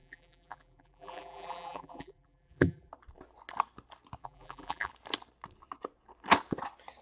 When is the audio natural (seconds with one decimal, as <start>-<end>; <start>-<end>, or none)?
2.9-4.2; 4.9-7.0